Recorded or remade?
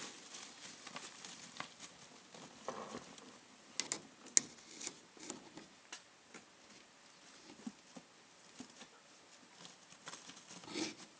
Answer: recorded